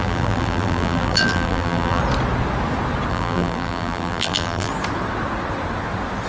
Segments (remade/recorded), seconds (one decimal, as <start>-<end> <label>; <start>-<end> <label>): 0.0-2.0 remade; 2.0-3.1 recorded; 3.1-4.7 remade; 4.7-6.3 recorded